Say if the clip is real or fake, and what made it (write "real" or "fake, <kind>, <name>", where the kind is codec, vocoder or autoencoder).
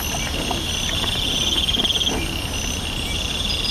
real